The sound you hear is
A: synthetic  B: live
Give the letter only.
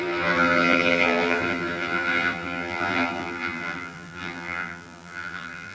A